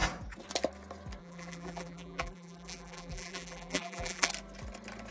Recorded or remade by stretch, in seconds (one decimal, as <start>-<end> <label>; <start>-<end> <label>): 0.0-1.2 recorded; 1.2-4.3 remade; 4.3-5.1 recorded